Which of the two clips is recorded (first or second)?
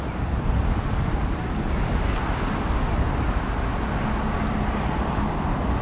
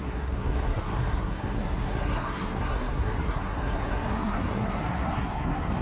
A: first